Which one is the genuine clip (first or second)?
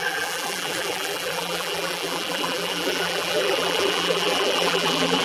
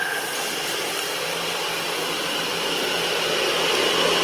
second